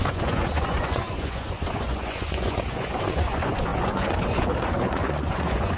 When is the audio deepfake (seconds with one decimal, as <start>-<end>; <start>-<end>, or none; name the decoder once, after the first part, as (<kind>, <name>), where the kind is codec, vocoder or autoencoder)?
0.0-5.8 (vocoder, Vocos)